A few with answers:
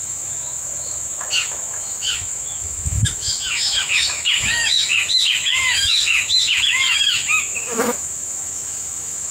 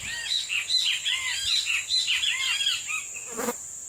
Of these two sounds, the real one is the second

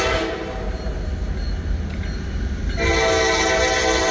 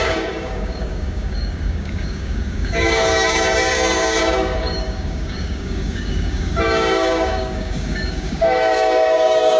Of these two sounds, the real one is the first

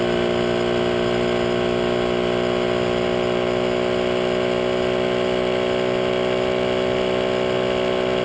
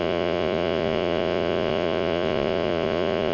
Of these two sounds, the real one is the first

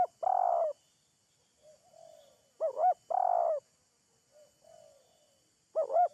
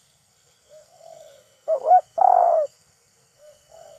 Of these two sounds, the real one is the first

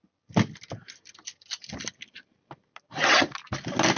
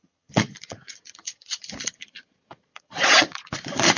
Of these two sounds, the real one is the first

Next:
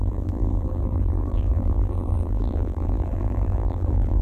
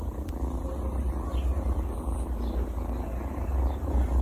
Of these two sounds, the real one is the second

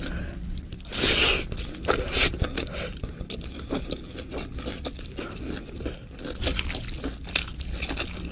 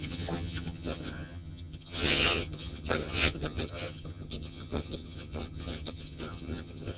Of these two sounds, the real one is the first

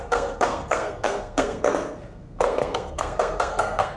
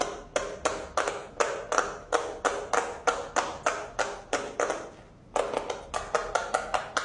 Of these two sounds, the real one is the second